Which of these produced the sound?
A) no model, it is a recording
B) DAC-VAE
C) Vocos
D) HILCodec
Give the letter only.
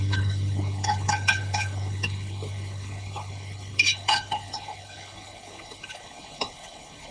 D